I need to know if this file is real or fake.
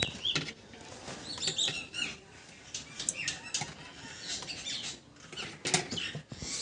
real